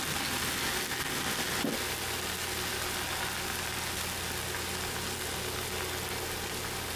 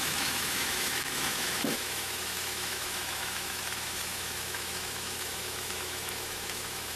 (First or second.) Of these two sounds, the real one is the first